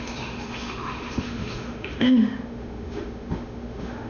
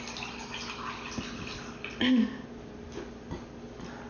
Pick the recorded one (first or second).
second